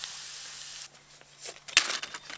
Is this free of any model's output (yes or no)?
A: yes